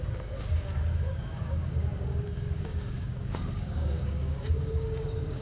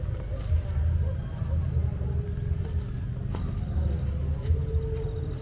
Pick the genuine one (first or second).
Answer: second